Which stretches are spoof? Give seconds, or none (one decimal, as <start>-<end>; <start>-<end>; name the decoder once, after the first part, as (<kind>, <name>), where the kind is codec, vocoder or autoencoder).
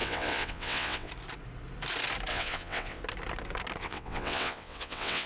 0.0-1.1 (vocoder, WaveNeXt); 2.3-3.0; 3.8-5.3